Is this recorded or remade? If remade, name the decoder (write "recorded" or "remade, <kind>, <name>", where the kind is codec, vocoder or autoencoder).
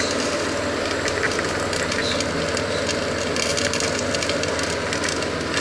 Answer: recorded